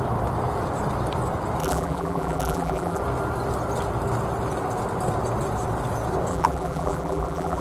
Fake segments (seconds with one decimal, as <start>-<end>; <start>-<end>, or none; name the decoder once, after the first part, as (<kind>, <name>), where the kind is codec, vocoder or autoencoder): 1.6-3.0 (vocoder, BigVGAN v2); 6.3-7.6